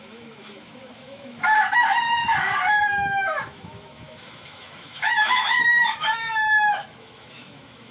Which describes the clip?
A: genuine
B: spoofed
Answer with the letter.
B